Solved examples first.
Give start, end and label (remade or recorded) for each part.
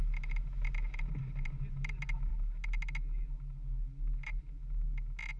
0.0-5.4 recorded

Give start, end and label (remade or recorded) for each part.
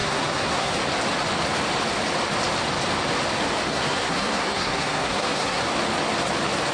0.0-0.7 remade; 0.7-3.7 recorded; 3.7-5.6 remade; 5.6-6.7 recorded